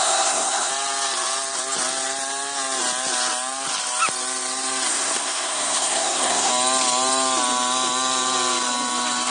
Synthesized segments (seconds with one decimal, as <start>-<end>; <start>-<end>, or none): 0.0-0.7; 4.9-6.5